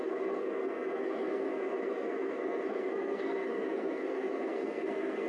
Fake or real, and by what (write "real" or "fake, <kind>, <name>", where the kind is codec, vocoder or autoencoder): fake, codec, SNAC